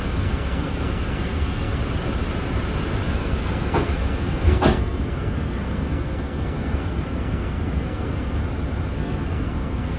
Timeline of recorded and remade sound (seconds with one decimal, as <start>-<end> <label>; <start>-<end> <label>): 0.0-1.8 remade; 1.8-3.1 recorded; 3.1-8.4 remade; 8.4-8.9 recorded; 8.9-10.0 remade